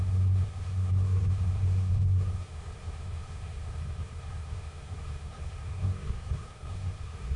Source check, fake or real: fake